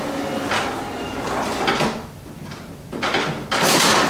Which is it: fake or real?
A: real